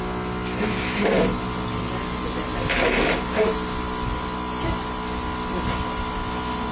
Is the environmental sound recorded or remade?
recorded